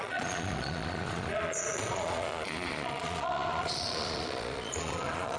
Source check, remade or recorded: remade